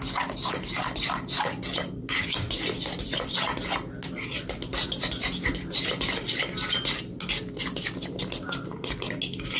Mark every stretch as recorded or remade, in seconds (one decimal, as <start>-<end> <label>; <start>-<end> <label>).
0.0-9.6 recorded